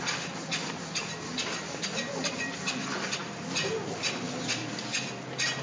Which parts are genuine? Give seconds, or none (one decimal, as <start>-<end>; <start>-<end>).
0.0-5.6